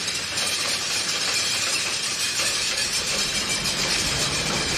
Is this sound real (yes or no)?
no